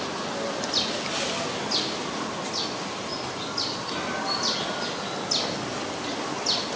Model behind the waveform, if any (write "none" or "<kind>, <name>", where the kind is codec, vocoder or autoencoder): none